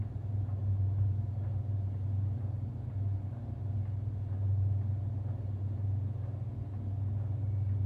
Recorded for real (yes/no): yes